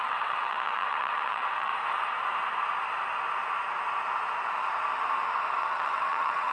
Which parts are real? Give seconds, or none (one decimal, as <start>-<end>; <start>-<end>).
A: 1.7-5.6

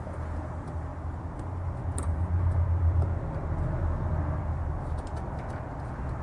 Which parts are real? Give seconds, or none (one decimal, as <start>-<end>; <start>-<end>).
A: 0.0-6.2

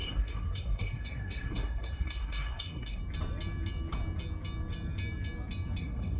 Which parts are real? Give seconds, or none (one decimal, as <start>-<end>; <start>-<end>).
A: 3.0-5.8

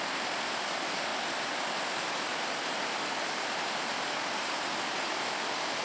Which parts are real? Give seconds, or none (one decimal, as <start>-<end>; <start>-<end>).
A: 0.0-5.8